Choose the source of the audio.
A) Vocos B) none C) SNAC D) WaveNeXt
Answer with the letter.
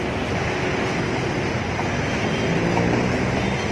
B